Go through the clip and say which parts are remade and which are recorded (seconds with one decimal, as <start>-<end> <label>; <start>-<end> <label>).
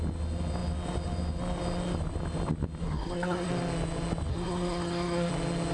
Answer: 0.0-2.8 recorded; 2.8-3.5 remade; 3.5-4.3 recorded; 4.3-5.3 remade; 5.3-5.7 recorded